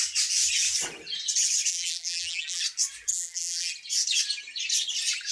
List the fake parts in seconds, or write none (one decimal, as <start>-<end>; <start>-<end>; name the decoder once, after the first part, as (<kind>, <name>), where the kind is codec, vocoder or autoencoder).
1.7-2.6 (vocoder, BigVGAN v2); 3.1-3.7